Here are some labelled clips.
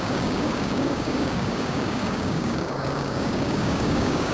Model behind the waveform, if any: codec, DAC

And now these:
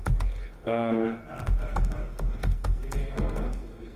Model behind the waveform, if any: codec, SNAC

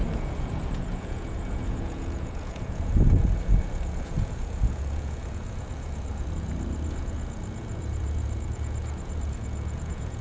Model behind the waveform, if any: vocoder, Vocos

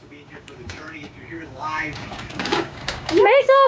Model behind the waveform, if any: codec, DAC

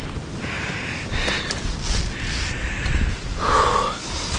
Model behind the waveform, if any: none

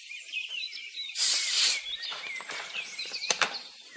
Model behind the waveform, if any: vocoder, BigVGAN v2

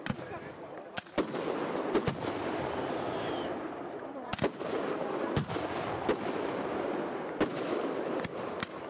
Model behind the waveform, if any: none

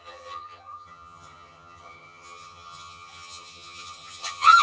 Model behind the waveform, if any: vocoder, HiFi-GAN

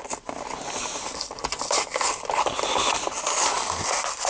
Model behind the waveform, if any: none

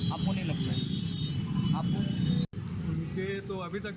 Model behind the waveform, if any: none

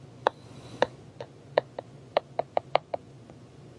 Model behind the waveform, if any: vocoder, Vocos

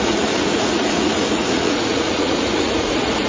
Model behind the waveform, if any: vocoder, Vocos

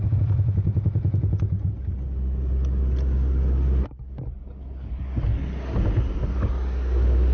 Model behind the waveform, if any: none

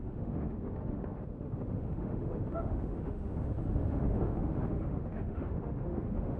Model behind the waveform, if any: autoencoder, DAC-VAE